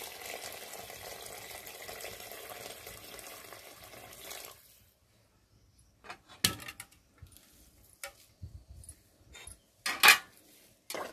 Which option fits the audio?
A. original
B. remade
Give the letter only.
A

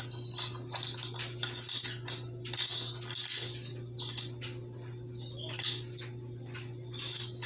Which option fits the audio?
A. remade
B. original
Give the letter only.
B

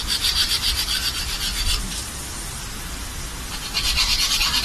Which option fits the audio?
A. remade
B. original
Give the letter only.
A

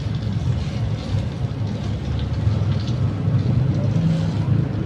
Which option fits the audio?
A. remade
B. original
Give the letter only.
B